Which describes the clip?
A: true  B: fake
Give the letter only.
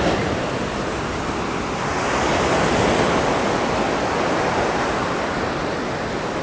A